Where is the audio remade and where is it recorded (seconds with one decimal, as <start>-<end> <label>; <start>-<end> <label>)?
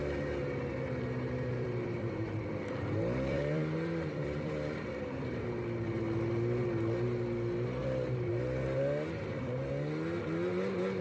0.0-1.5 recorded; 1.5-5.4 remade; 5.4-11.0 recorded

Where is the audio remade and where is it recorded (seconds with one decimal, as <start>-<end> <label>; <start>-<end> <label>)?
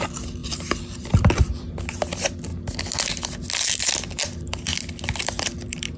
0.0-2.5 remade; 2.5-4.1 recorded; 4.1-4.7 remade; 4.7-5.2 recorded; 5.2-6.0 remade